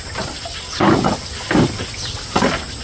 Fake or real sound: real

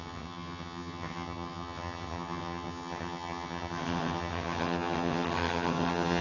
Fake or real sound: fake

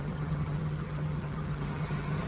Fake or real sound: fake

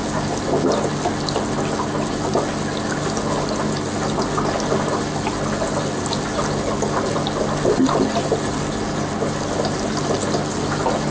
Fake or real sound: real